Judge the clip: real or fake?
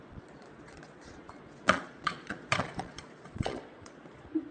fake